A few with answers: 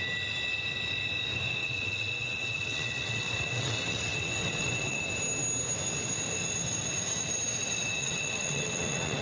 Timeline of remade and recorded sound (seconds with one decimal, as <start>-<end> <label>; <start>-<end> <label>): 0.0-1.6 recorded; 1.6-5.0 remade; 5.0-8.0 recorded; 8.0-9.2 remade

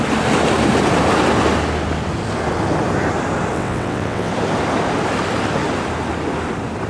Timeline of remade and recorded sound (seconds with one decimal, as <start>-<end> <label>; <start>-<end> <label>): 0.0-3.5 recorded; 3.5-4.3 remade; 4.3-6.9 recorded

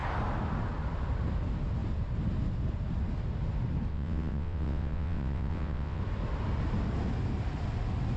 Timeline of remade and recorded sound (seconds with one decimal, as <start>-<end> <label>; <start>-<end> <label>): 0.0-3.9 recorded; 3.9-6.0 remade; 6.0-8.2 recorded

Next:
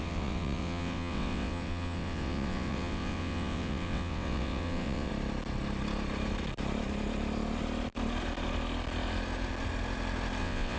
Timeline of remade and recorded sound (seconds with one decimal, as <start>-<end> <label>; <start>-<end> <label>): 0.0-5.1 remade; 5.1-10.4 recorded; 10.4-10.8 remade